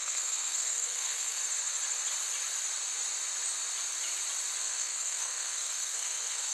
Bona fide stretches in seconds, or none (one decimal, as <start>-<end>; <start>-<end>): 1.4-4.6